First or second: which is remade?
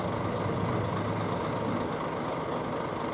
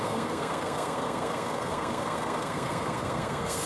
second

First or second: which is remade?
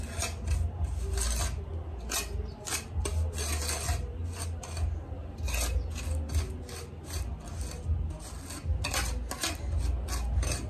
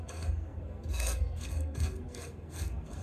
second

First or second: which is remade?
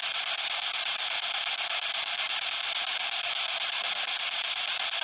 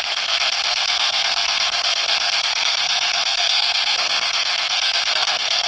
second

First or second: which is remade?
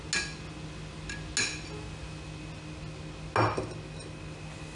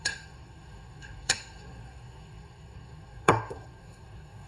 second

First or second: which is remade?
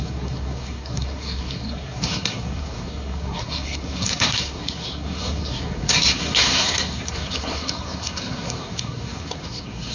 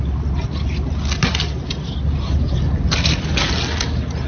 first